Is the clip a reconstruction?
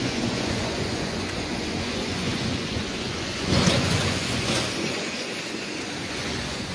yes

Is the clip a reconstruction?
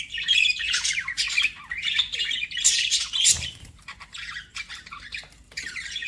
yes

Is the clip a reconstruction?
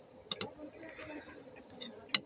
no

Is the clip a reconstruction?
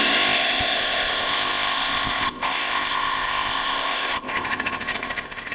yes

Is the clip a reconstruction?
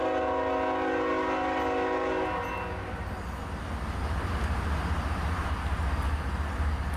no